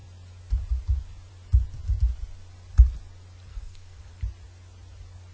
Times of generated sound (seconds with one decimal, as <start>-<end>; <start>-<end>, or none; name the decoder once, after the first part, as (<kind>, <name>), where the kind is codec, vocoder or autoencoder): 3.5-4.1 (codec, SNAC)